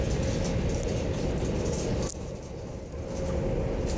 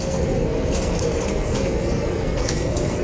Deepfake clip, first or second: second